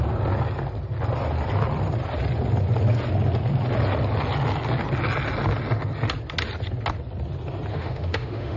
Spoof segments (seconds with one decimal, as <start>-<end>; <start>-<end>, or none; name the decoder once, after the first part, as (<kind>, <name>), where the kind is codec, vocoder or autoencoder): 7.7-8.6 (autoencoder, DAC-VAE)

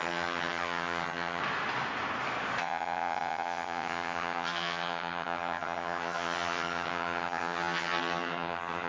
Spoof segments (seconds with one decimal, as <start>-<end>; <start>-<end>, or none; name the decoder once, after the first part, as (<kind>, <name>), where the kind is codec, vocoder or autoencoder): 0.0-1.4 (vocoder, HiFi-GAN); 2.6-8.9

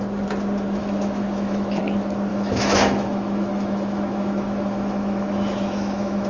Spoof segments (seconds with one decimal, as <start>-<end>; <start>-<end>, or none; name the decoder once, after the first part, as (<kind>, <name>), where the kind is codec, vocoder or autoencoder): 0.8-1.8 (autoencoder, DAC-VAE); 2.3-6.3

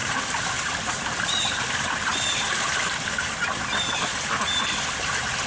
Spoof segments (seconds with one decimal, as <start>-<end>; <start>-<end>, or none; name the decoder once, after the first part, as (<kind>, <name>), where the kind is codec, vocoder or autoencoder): none

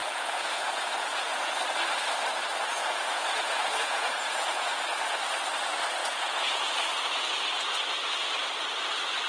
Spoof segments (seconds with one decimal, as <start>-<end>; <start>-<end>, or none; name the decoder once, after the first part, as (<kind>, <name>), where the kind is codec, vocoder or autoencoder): 0.0-1.5 (vocoder, Vocos); 2.7-4.8; 6.0-6.6